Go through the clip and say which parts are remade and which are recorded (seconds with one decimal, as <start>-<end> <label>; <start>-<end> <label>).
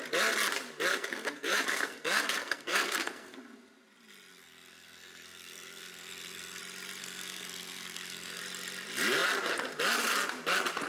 0.0-0.9 recorded; 0.9-3.4 remade; 3.4-4.3 recorded; 4.3-6.6 remade; 6.6-7.0 recorded; 7.0-8.4 remade; 8.4-10.9 recorded